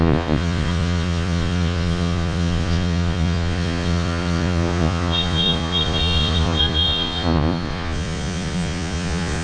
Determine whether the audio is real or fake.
fake